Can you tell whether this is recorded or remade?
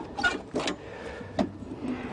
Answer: recorded